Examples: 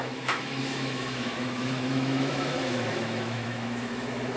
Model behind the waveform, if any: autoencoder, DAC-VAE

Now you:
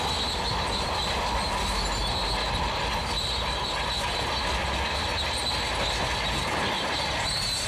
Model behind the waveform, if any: none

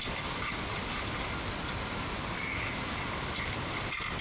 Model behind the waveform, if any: none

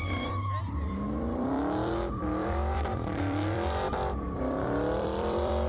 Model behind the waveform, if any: vocoder, BigVGAN v2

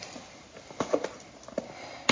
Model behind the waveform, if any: none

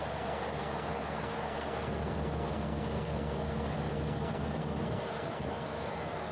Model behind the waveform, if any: codec, SNAC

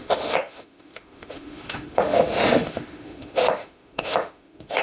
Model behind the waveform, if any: autoencoder, DAC-VAE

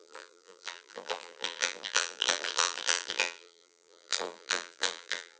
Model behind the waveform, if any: vocoder, BigVGAN v2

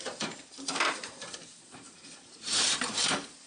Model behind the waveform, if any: vocoder, BigVGAN v2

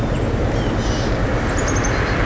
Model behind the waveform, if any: none